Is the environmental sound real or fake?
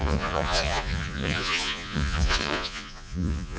fake